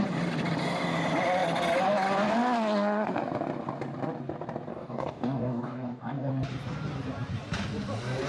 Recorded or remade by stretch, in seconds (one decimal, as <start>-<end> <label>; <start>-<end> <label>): 0.0-4.7 recorded; 4.7-6.3 remade; 6.3-8.3 recorded